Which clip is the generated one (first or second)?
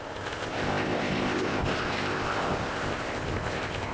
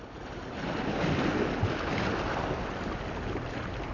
first